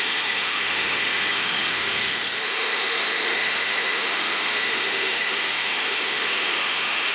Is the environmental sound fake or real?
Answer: fake